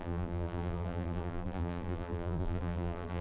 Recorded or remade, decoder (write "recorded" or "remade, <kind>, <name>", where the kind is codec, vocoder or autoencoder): remade, vocoder, BigVGAN v2